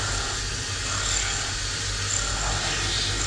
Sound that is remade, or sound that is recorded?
recorded